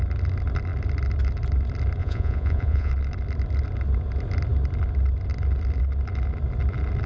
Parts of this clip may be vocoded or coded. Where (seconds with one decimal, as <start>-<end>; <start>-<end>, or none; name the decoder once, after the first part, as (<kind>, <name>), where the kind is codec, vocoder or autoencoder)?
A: 2.0-2.9 (vocoder, Vocos)